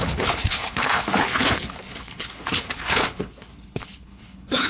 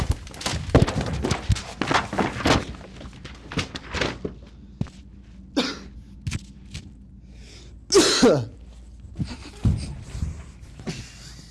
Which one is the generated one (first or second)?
first